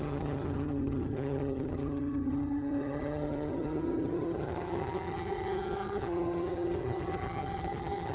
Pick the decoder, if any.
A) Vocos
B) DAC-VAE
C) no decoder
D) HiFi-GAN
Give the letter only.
D